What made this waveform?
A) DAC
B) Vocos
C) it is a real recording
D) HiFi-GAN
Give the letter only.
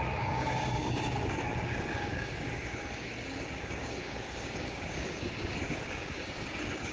A